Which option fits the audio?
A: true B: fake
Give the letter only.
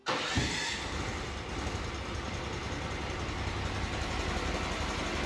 A